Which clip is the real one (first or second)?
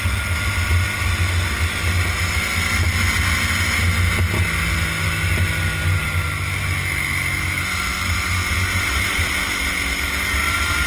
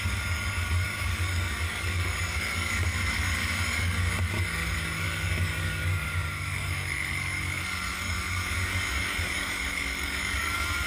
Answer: first